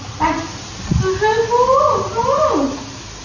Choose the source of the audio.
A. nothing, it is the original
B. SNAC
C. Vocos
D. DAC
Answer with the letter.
A